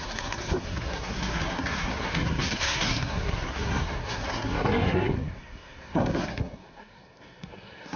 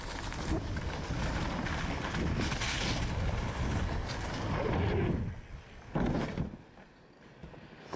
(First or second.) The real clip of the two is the second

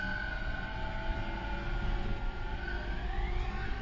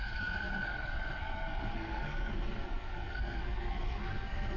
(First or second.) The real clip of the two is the first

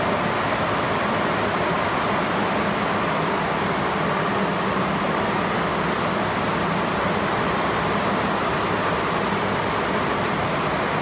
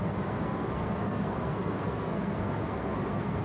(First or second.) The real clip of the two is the first